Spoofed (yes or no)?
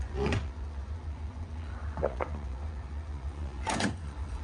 yes